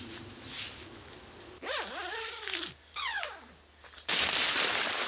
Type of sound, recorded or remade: recorded